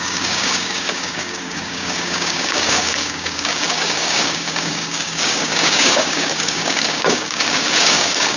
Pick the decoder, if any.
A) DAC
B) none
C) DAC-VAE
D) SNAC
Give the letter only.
A